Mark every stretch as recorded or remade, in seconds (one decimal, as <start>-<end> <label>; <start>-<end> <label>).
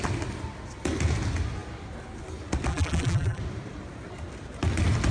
0.0-2.7 recorded; 2.7-3.4 remade; 3.4-5.1 recorded